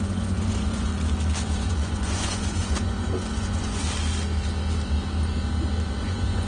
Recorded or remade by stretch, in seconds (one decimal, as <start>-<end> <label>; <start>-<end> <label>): 0.0-0.9 remade; 0.9-1.4 recorded; 1.4-3.8 remade; 3.8-6.0 recorded; 6.0-6.5 remade